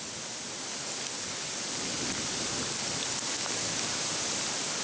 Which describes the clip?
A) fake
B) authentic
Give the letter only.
B